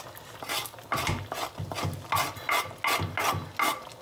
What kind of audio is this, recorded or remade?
recorded